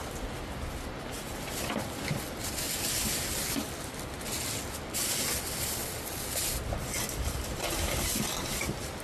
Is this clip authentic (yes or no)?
yes